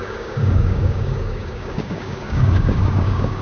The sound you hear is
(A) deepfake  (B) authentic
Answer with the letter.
A